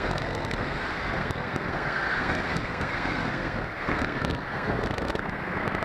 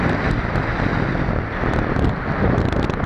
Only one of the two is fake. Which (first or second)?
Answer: first